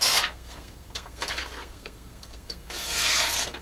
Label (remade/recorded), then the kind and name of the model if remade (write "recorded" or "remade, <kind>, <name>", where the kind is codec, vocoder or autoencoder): remade, codec, SNAC